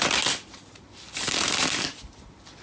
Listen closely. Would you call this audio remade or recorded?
recorded